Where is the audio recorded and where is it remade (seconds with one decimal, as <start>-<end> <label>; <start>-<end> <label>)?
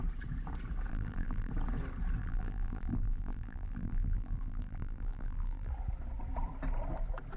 0.0-0.9 recorded; 0.9-1.5 remade; 1.5-2.2 recorded; 2.2-5.7 remade; 5.7-7.4 recorded